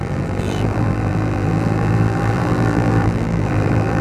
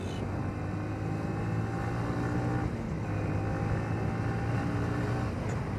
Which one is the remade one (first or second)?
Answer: first